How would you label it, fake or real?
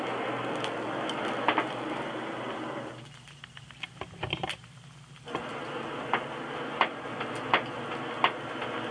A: real